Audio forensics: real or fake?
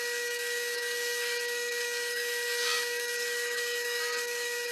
fake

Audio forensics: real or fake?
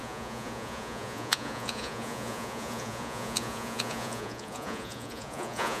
fake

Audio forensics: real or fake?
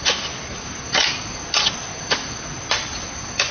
real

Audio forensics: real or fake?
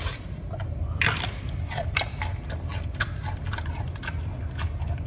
real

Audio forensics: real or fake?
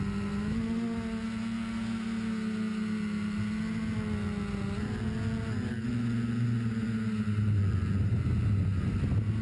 real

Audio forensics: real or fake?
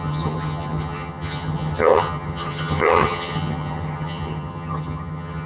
fake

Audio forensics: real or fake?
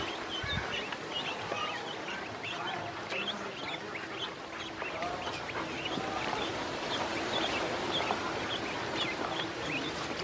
real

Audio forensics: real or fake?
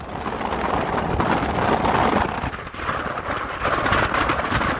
real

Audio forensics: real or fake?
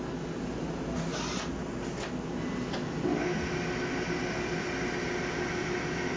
real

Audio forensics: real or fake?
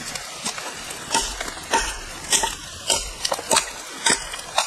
real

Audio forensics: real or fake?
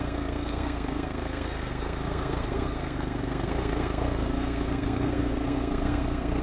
fake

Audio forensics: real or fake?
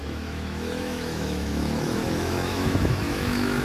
fake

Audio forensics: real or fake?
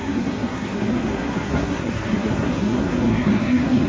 fake